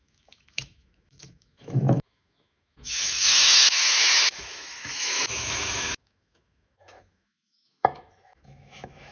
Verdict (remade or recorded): remade